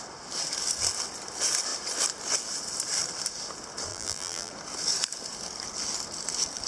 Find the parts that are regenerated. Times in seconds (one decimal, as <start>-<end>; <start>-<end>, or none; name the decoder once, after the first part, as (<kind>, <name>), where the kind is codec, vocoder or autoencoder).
3.9-4.5 (vocoder, BigVGAN v2)